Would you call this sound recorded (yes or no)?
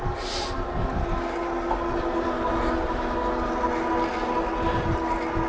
yes